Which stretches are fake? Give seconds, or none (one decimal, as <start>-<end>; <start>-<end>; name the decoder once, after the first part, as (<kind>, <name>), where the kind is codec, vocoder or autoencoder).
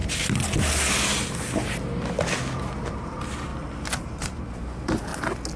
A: 2.9-3.5 (vocoder, BigVGAN v2); 4.0-5.1